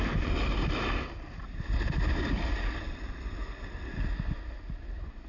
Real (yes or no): yes